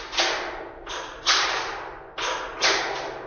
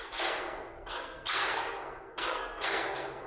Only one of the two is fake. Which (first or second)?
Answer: second